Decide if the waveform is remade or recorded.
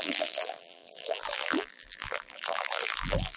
remade